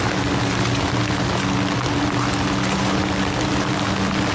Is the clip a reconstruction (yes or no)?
no